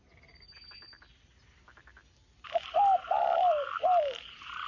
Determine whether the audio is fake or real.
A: real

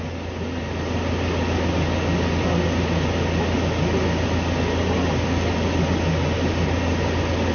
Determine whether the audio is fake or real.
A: real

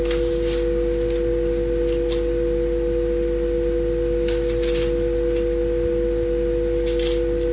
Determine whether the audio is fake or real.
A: real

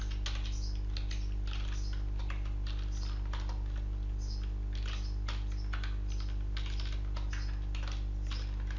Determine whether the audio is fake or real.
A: real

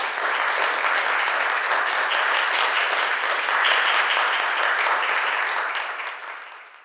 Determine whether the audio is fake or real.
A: real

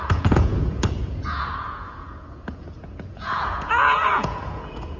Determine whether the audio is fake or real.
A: fake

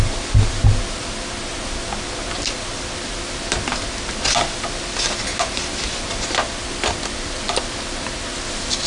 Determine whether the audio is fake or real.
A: real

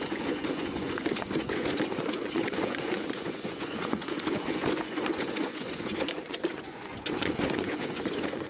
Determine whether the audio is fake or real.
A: fake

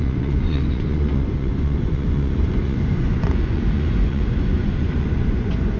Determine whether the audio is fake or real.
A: fake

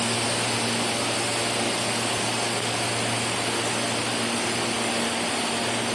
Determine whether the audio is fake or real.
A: real